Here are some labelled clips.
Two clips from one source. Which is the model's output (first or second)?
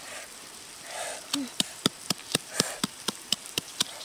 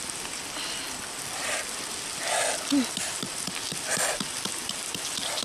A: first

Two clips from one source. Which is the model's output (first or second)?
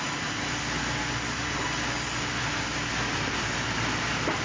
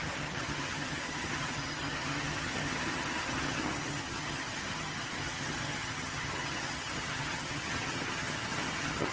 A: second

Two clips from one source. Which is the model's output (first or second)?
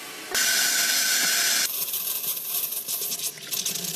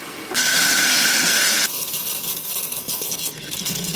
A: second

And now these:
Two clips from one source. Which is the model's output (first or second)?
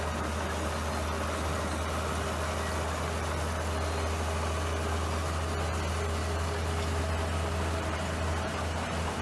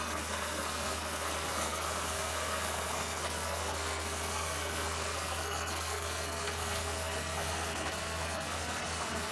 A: second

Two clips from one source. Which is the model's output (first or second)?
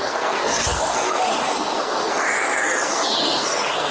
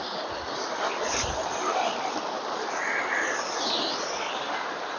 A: first